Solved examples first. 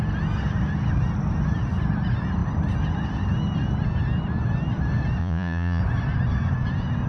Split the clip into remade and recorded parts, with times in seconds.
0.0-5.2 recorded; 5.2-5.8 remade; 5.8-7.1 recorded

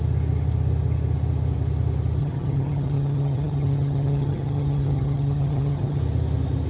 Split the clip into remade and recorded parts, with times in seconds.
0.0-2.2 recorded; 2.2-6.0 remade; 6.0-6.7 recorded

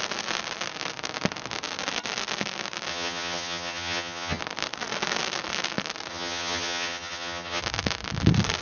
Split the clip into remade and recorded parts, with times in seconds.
0.0-2.9 recorded; 2.9-4.4 remade; 4.4-6.1 recorded; 6.1-7.6 remade; 7.6-8.6 recorded